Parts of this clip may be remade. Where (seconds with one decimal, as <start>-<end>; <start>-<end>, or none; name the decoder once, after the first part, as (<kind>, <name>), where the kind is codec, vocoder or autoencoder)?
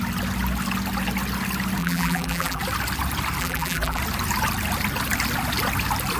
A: 1.8-2.6 (vocoder, BigVGAN v2); 3.4-4.0